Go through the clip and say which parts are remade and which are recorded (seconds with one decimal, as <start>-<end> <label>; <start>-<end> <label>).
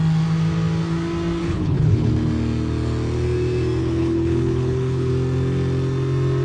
0.0-1.4 recorded; 1.4-2.1 remade; 2.1-3.8 recorded; 3.8-5.1 remade; 5.1-6.4 recorded